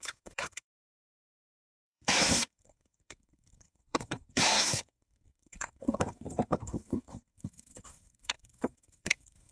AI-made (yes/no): yes